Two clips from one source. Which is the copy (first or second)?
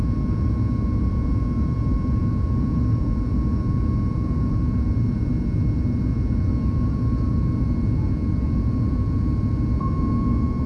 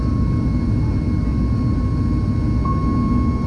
first